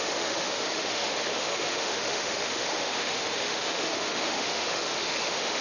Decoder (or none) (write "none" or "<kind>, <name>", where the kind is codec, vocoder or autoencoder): autoencoder, DAC-VAE